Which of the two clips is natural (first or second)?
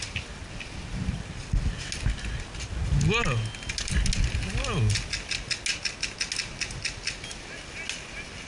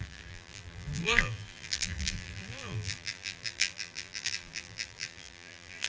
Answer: first